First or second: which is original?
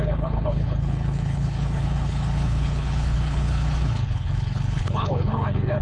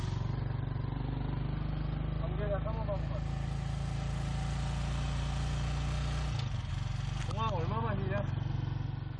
second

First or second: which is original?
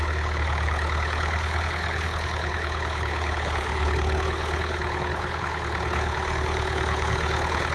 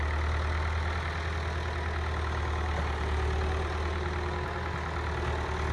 second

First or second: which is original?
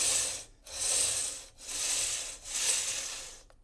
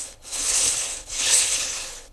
first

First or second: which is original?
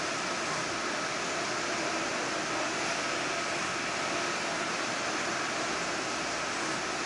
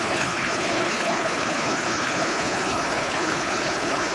first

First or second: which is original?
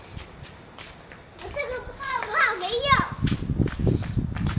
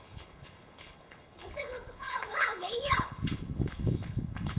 first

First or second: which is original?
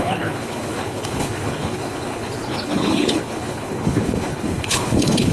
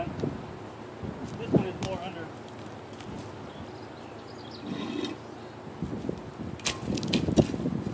second